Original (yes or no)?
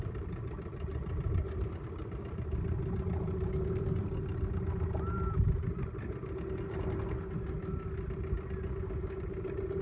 yes